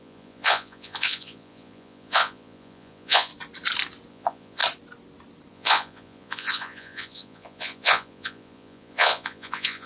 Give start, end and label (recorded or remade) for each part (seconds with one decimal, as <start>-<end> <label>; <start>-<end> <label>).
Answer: 0.0-3.3 remade; 3.3-4.1 recorded; 4.1-4.6 remade; 4.6-5.5 recorded; 5.5-9.9 remade